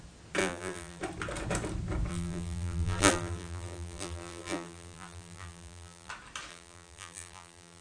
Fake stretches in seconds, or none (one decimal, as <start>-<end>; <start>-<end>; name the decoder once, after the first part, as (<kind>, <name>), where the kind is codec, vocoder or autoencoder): 0.4-1.0 (vocoder, BigVGAN v2); 2.1-6.1; 6.5-7.8